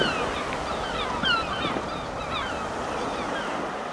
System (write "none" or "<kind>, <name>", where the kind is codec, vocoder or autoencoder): none